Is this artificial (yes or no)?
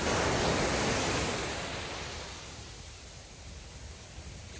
no